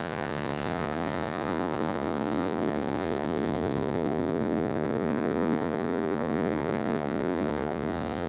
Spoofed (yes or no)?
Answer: yes